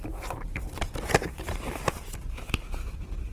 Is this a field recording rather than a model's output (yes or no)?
no